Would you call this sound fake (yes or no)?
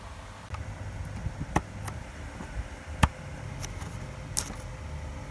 no